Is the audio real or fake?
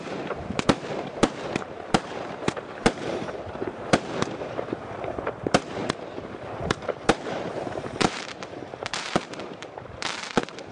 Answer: fake